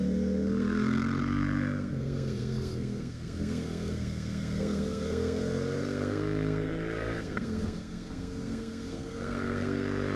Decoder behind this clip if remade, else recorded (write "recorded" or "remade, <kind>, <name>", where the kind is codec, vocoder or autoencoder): remade, codec, SNAC